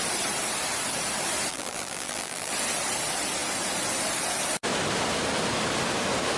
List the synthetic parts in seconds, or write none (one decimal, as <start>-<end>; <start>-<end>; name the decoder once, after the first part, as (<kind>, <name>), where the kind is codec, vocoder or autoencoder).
1.5-2.5 (vocoder, BigVGAN v2)